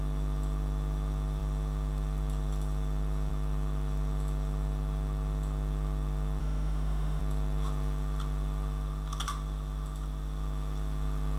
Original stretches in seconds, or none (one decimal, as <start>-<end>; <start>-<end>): 0.0-6.4; 7.2-11.4